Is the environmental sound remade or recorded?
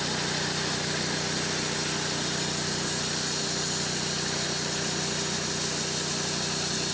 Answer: recorded